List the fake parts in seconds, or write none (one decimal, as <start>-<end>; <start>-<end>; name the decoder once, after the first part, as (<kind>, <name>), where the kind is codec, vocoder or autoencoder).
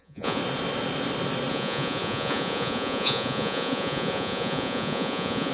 0.0-0.4 (vocoder, Vocos); 1.5-5.5